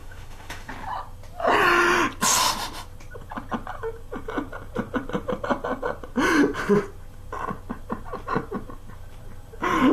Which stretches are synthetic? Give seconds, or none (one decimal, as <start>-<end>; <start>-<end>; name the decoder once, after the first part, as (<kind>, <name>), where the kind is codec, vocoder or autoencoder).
0.0-0.7 (autoencoder, DAC-VAE)